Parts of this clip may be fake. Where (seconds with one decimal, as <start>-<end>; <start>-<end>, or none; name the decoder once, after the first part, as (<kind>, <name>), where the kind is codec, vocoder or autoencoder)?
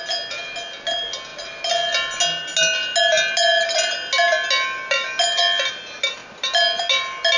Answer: none